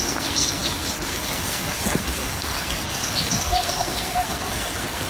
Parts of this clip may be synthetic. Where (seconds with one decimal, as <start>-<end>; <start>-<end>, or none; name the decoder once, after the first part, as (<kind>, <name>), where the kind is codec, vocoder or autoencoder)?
0.0-5.1 (codec, SNAC)